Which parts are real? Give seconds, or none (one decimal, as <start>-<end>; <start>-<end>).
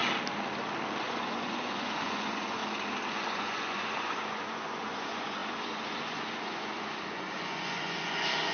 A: 0.0-1.0; 2.6-3.1